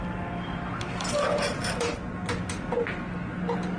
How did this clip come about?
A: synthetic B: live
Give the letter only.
B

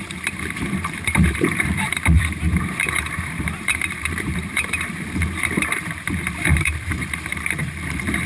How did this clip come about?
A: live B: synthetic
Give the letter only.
B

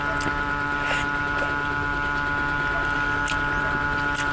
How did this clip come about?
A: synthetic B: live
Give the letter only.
B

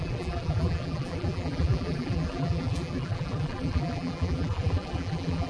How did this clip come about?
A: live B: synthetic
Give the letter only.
B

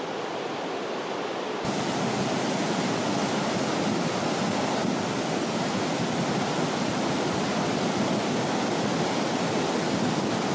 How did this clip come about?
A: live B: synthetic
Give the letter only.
A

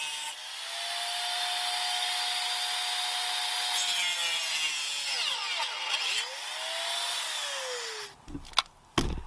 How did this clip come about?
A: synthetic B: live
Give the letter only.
B